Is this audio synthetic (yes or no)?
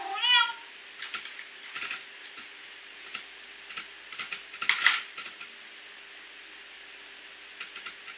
no